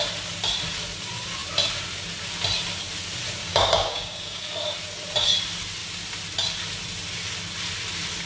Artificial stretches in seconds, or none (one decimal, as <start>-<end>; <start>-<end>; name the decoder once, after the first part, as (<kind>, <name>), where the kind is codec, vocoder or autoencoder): 3.4-4.4 (codec, DAC)